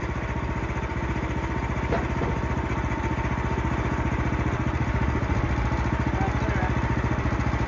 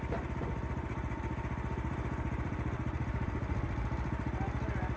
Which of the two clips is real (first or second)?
first